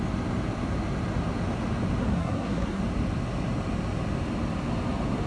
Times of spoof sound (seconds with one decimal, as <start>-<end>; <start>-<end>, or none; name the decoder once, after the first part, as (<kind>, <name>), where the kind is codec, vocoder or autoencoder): 2.0-2.8 (codec, SNAC)